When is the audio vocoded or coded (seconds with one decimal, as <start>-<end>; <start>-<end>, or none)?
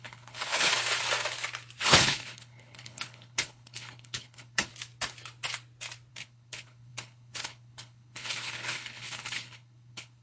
0.0-0.7; 1.8-4.7; 6.1-10.2